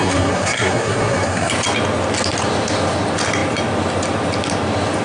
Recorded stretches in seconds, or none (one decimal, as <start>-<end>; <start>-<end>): 1.5-5.0